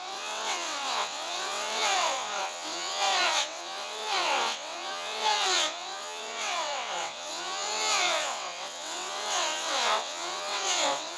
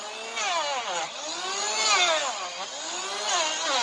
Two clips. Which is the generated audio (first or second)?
first